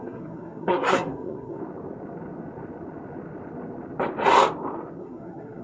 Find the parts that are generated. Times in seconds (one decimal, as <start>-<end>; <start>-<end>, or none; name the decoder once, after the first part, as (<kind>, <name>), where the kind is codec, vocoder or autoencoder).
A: 0.0-1.6 (codec, SNAC); 5.0-5.6